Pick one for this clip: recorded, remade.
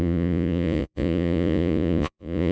remade